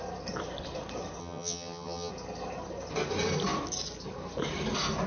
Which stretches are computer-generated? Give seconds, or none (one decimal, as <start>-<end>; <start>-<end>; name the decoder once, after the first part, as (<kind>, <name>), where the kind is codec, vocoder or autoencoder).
1.2-2.1 (vocoder, HiFi-GAN)